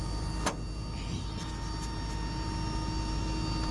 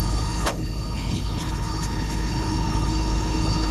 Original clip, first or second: first